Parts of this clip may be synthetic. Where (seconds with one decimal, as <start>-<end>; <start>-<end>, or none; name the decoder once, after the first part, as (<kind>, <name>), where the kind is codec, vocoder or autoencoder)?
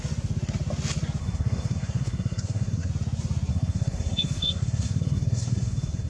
1.2-2.9 (codec, SNAC); 3.5-6.1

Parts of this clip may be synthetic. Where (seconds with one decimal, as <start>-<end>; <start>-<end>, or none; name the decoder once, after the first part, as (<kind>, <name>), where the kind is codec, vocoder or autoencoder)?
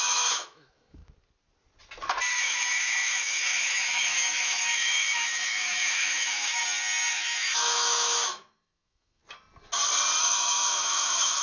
0.0-1.0 (autoencoder, DAC-VAE); 2.3-6.6; 7.1-9.2; 10.2-11.4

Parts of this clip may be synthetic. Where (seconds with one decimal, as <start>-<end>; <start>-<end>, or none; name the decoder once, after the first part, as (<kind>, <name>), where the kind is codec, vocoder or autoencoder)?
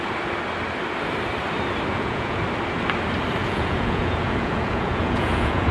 1.9-2.4 (vocoder, Vocos); 3.4-5.7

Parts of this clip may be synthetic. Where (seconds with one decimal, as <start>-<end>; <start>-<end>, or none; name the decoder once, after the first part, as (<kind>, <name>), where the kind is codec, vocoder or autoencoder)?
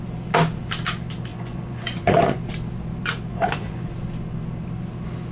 1.3-2.4 (vocoder, Vocos); 3.3-3.8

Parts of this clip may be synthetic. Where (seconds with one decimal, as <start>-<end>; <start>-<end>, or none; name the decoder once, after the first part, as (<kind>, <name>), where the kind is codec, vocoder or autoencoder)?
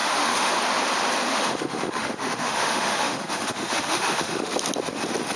0.0-0.5 (autoencoder, DAC-VAE); 1.3-4.5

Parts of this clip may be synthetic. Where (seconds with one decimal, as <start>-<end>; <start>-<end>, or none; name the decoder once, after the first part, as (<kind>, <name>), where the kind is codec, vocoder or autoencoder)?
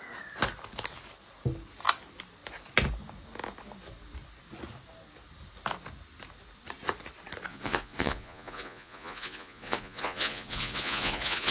7.5-11.5 (vocoder, Vocos)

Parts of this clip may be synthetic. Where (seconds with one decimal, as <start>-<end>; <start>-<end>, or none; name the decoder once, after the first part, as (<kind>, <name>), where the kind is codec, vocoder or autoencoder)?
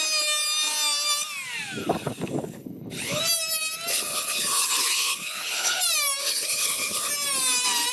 1.8-3.2 (codec, HILCodec); 3.9-5.8; 6.2-7.1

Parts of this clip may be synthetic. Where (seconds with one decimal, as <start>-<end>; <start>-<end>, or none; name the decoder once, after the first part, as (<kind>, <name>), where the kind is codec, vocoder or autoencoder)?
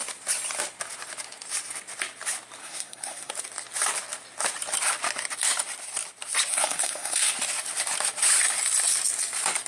2.6-3.3 (codec, SNAC); 6.5-7.3